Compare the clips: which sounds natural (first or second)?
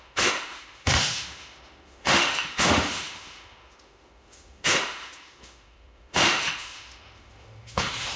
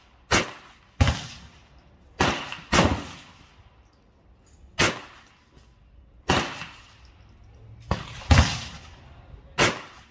second